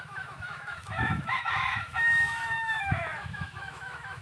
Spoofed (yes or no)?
yes